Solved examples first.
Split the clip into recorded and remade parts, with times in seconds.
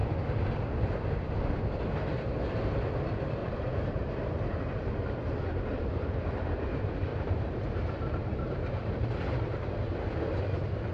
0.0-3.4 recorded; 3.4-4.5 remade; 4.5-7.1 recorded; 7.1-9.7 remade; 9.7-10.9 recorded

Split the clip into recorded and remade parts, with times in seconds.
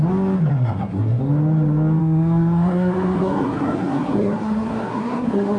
0.0-0.5 recorded; 0.5-1.2 remade; 1.2-2.0 recorded; 2.0-5.6 remade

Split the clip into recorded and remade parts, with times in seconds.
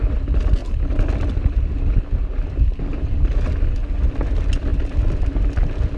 0.0-6.0 recorded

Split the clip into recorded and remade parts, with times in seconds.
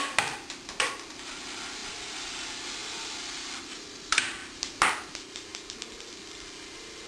0.0-7.1 recorded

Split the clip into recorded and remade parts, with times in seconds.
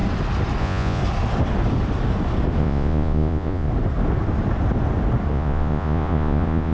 0.0-0.6 recorded; 0.6-1.0 remade; 1.0-2.6 recorded; 2.6-3.7 remade; 3.7-5.3 recorded; 5.3-6.7 remade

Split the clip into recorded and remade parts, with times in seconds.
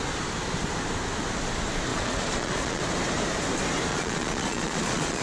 0.0-1.9 recorded; 1.9-2.8 remade; 2.8-3.9 recorded; 3.9-5.2 remade